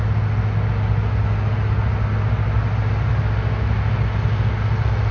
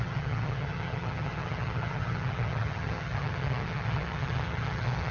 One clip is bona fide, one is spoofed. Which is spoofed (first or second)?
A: second